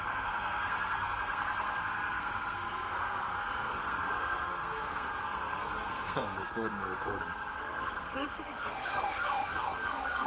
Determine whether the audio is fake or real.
fake